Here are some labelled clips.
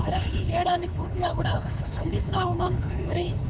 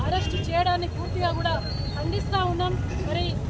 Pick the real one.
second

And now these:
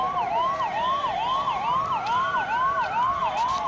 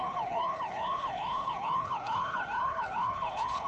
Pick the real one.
first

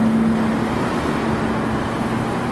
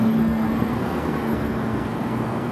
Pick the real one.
first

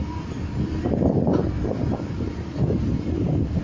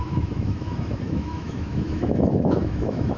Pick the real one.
first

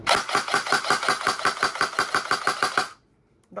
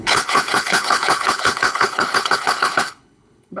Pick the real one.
first